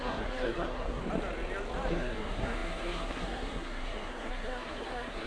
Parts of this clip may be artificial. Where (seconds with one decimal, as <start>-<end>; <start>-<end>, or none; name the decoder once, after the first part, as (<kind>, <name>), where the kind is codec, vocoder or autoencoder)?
0.0-1.0 (codec, SNAC); 1.9-5.3